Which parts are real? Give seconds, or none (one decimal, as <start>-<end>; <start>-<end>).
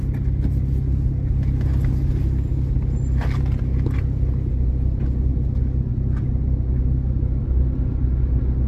0.0-8.7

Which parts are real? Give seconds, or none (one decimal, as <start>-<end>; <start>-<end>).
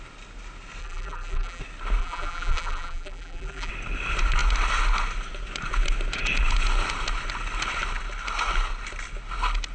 0.0-0.8; 1.6-2.0; 3.7-9.7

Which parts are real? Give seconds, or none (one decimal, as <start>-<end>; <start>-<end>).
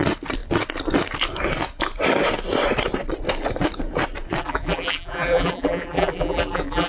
0.0-4.4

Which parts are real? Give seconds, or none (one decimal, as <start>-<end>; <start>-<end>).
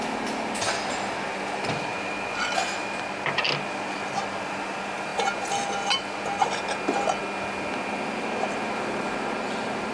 0.0-9.9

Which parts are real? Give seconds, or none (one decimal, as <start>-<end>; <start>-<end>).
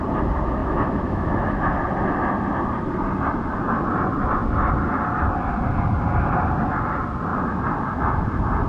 0.0-0.6; 1.8-8.7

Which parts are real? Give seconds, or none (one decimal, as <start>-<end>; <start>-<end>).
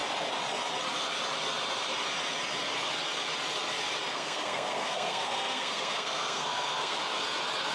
0.0-4.1; 7.0-7.7